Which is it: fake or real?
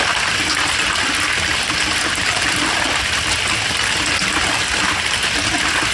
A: real